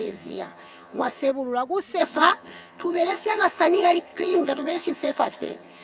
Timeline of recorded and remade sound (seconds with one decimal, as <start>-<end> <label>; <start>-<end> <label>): 0.0-1.3 remade; 1.3-2.0 recorded; 2.0-5.8 remade